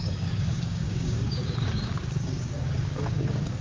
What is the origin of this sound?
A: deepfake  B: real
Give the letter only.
A